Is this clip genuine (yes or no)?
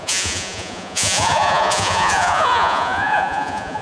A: no